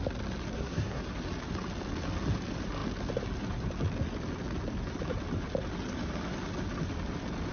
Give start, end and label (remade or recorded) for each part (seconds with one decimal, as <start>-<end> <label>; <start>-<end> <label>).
0.0-0.5 recorded; 0.5-1.0 remade; 1.0-7.5 recorded